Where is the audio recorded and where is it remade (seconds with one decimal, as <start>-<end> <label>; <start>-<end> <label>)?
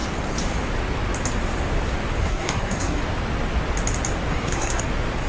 0.0-2.2 recorded; 2.2-3.0 remade; 3.0-4.3 recorded; 4.3-4.8 remade; 4.8-5.3 recorded